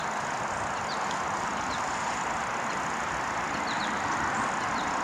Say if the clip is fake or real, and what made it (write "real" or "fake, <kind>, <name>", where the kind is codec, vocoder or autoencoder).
real